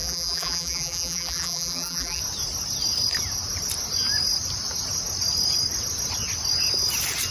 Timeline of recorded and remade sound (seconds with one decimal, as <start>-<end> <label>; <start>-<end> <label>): 0.0-2.2 remade; 2.2-7.3 recorded